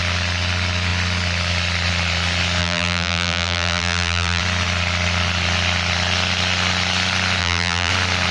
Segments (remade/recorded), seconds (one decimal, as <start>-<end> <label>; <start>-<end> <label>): 0.0-2.6 recorded; 2.6-4.4 remade; 4.4-7.4 recorded; 7.4-7.9 remade; 7.9-8.3 recorded